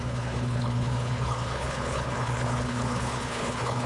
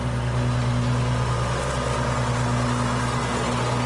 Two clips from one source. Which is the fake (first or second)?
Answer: first